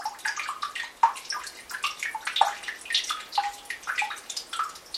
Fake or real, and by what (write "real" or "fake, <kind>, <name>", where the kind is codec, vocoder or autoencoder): real